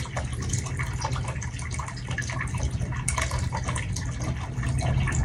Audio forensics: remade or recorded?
recorded